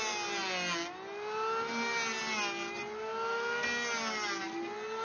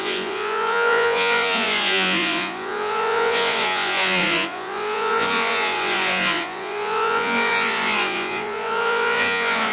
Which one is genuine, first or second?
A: first